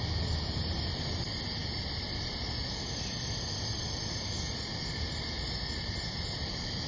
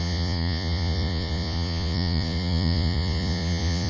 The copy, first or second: second